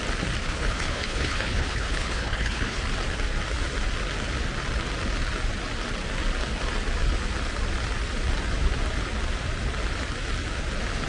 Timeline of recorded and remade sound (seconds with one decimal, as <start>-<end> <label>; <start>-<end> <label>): 0.0-0.4 recorded; 0.4-2.8 remade; 2.8-11.1 recorded